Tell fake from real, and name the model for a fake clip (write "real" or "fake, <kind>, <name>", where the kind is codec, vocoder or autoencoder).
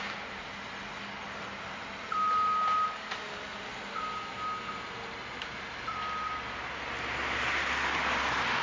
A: real